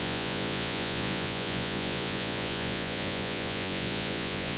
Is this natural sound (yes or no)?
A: no